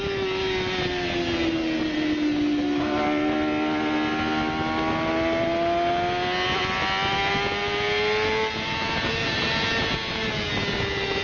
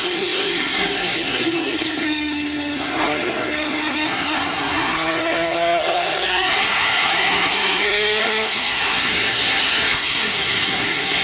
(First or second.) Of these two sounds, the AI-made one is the second